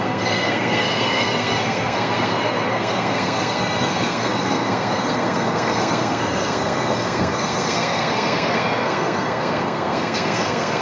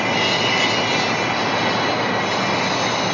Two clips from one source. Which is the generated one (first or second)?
first